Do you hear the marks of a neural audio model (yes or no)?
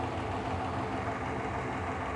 no